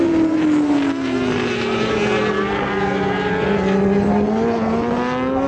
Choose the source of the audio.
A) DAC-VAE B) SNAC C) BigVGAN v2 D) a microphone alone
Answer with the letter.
D